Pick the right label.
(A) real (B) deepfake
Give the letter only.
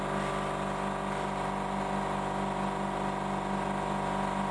A